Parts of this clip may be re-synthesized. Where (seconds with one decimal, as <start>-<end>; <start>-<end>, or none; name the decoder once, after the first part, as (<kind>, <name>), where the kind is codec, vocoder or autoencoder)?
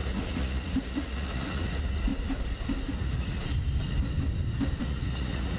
0.0-2.1 (vocoder, Vocos); 2.9-3.4; 4.8-5.6